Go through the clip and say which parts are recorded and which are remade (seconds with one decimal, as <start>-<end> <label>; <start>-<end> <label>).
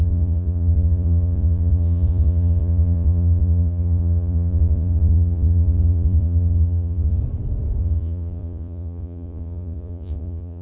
0.0-7.2 remade; 7.2-7.8 recorded; 7.8-10.6 remade